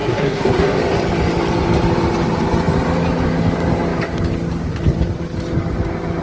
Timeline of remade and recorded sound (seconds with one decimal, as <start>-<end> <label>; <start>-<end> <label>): 0.0-0.8 remade; 0.8-6.2 recorded